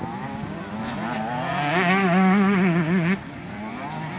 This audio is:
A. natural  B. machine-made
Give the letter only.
A